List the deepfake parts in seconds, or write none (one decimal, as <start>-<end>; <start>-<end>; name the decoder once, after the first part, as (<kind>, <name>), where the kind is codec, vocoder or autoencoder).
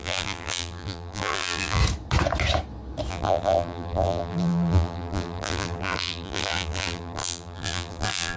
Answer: 0.0-1.8 (vocoder, BigVGAN v2); 3.1-8.4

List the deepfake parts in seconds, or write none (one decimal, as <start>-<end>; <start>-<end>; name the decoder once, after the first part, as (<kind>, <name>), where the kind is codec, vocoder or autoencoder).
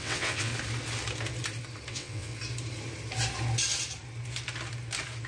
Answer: 0.0-0.5 (vocoder, WaveNeXt); 1.9-2.3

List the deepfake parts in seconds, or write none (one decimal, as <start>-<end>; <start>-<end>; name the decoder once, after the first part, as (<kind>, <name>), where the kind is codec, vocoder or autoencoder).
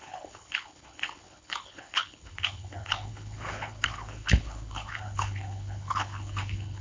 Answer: 0.0-6.8 (codec, HILCodec)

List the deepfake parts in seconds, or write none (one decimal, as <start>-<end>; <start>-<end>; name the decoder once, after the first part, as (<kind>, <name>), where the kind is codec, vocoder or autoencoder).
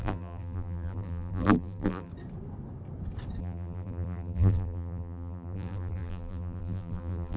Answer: 0.0-2.1 (vocoder, BigVGAN v2); 3.4-7.4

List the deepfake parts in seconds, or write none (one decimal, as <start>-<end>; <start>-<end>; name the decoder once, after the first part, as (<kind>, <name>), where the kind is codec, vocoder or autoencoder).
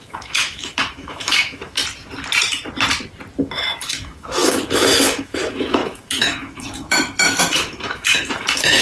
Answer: 0.0-1.8 (autoencoder, DAC-VAE); 3.4-8.8